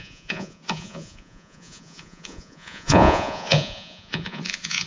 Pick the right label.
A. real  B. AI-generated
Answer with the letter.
B